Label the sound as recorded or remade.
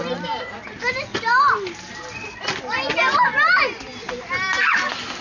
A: recorded